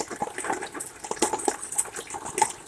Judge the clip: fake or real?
real